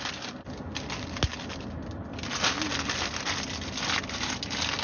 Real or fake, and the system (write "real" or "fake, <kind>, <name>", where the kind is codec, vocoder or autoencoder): real